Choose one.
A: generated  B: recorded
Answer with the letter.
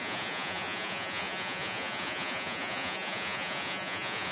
A